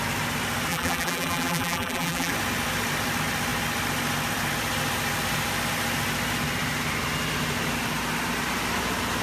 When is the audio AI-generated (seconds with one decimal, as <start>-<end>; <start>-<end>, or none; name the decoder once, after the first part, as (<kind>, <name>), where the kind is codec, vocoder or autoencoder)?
0.7-2.3 (vocoder, BigVGAN v2)